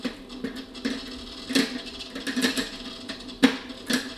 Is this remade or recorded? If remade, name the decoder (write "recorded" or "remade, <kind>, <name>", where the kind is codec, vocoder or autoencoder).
recorded